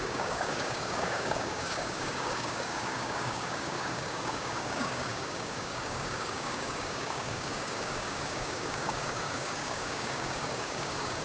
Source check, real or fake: fake